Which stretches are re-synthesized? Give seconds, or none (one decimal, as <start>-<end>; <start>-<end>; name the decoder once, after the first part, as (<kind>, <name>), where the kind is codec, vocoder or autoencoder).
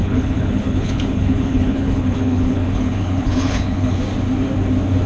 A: 0.0-4.0 (codec, HILCodec)